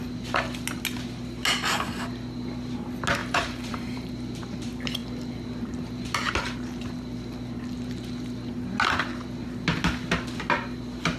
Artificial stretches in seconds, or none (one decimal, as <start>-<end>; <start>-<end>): 3.2-4.1